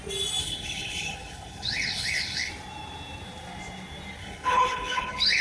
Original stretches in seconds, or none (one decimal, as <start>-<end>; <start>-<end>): 0.0-0.4; 2.5-4.2